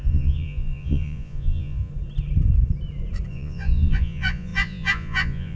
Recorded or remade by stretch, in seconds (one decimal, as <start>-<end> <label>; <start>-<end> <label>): 0.0-1.9 remade; 1.9-3.3 recorded; 3.3-5.6 remade